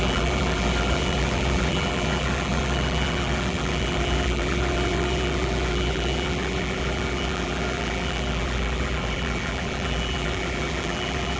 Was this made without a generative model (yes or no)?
no